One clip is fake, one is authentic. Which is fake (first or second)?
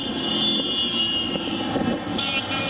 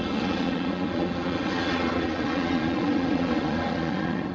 second